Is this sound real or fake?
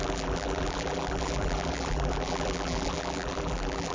fake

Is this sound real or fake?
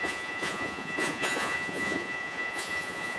fake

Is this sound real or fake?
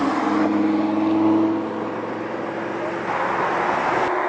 real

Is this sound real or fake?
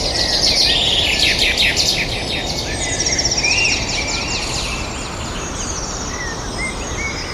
real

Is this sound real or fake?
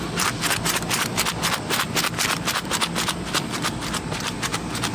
fake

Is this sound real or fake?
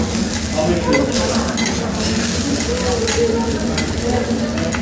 real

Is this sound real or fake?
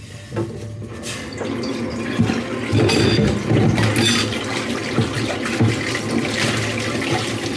real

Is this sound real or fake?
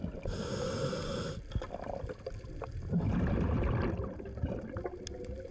real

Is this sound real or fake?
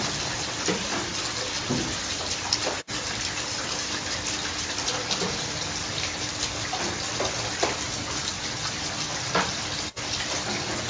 real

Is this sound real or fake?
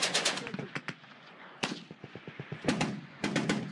fake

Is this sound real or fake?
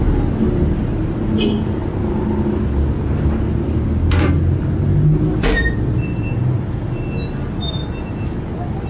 real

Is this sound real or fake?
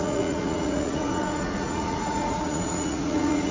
fake